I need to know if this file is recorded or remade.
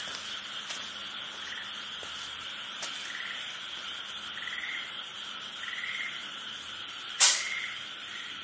recorded